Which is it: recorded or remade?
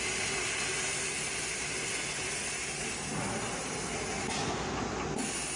recorded